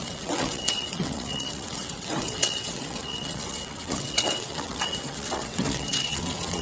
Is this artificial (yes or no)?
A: yes